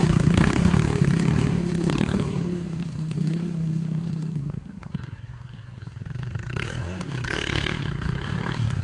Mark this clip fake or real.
fake